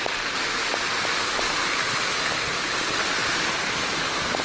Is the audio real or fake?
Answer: real